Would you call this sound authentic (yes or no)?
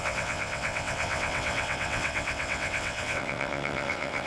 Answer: no